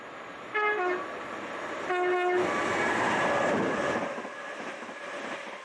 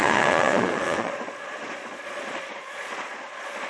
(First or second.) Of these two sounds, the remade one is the second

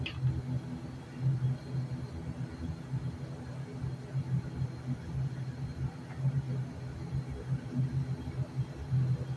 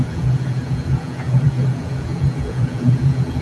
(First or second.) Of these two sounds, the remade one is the second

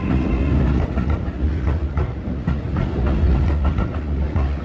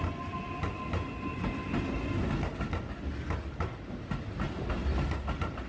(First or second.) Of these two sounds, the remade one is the first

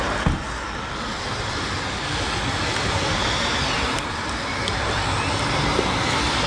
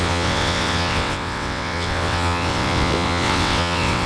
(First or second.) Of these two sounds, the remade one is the second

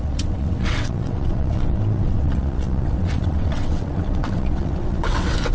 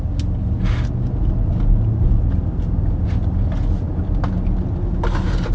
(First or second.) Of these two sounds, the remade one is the first